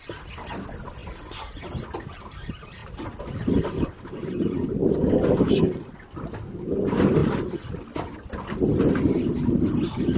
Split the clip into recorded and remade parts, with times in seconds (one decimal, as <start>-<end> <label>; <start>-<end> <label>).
0.0-10.2 recorded